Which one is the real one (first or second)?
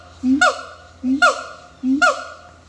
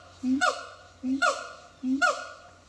first